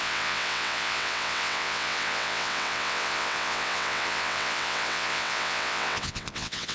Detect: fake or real fake